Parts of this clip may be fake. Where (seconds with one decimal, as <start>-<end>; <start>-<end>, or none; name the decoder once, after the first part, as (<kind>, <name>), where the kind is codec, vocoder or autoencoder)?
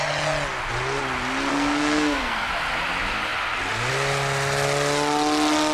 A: 1.5-2.5 (codec, SNAC)